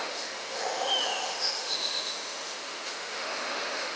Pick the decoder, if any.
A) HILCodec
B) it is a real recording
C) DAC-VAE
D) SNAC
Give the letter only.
C